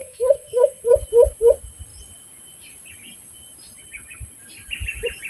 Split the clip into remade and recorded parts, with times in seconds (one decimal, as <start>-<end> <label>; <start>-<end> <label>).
0.0-0.9 remade; 0.9-5.3 recorded